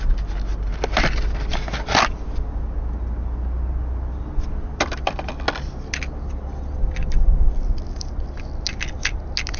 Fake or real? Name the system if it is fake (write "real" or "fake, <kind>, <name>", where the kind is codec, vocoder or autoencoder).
real